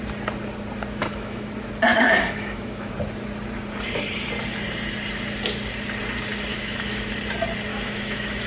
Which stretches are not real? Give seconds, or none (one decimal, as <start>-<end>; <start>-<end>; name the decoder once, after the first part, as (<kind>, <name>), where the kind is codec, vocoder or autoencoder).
1.0-1.5 (autoencoder, DAC-VAE); 1.9-2.9; 6.5-7.1; 7.7-8.5